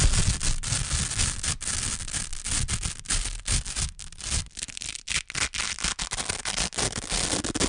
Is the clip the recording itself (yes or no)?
yes